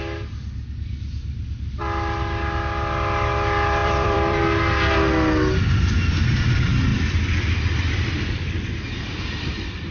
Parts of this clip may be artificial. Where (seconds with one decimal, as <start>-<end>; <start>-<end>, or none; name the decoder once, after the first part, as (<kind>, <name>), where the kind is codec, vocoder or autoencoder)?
3.8-4.4 (vocoder, BigVGAN v2); 6.9-9.9

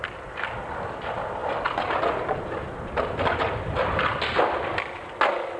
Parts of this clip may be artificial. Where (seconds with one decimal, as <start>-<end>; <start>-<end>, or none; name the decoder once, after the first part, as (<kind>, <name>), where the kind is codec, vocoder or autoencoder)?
1.4-4.8 (vocoder, BigVGAN v2)